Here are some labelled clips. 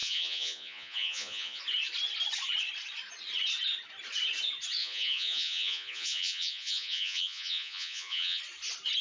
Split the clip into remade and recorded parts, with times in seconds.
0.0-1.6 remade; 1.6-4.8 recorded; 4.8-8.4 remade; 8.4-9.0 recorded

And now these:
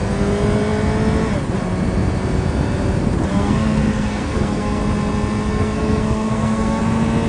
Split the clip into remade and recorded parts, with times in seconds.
0.0-3.3 recorded; 3.3-4.8 remade; 4.8-5.5 recorded; 5.5-6.8 remade; 6.8-7.3 recorded

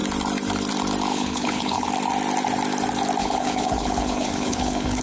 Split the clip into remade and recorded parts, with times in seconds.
0.0-1.1 recorded; 1.1-1.9 remade; 1.9-3.2 recorded; 3.2-5.0 remade